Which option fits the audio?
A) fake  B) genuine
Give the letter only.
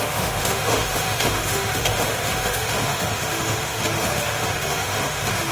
A